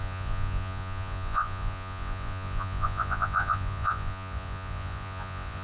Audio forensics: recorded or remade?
remade